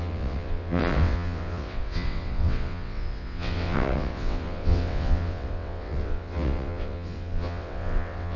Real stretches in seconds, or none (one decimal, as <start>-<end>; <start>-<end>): none